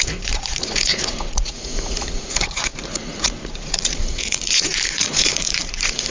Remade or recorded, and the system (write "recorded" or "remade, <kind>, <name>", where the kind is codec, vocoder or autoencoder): remade, vocoder, Vocos